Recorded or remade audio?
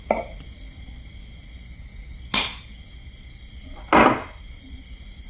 recorded